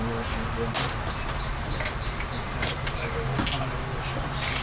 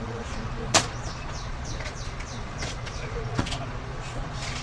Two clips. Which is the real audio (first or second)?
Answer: first